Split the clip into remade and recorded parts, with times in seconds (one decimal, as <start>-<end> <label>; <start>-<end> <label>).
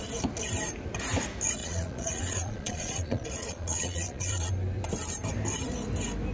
0.0-1.6 recorded; 1.6-4.5 remade; 4.5-6.3 recorded